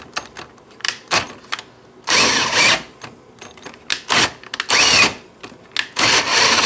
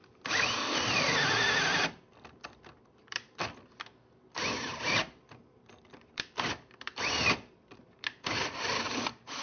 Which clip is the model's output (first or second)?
second